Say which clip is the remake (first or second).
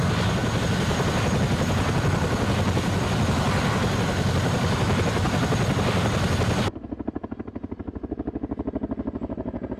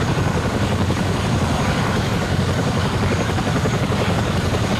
second